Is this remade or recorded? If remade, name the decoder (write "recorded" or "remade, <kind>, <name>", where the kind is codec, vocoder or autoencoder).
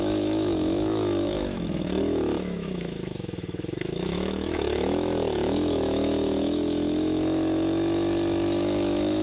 remade, autoencoder, DAC-VAE